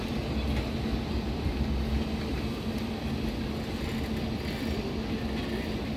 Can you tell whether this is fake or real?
real